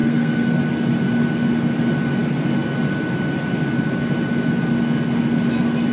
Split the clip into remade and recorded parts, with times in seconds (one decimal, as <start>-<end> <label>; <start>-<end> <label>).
0.0-0.6 remade; 0.6-5.9 recorded